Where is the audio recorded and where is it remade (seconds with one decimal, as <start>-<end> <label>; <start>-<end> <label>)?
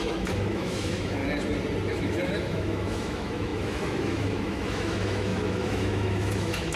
0.0-1.2 remade; 1.2-1.9 recorded; 1.9-6.8 remade